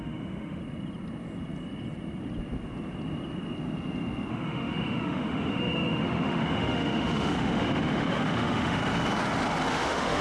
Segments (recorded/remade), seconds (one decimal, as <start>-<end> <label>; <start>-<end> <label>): 0.0-0.6 remade; 0.6-4.3 recorded; 4.3-8.8 remade; 8.8-9.7 recorded; 9.7-10.2 remade